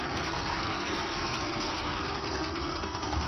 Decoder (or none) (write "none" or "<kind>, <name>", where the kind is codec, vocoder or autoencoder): codec, SNAC